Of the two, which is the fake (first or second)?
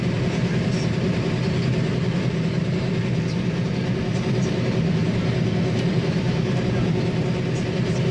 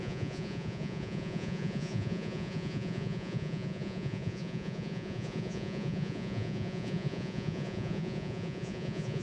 second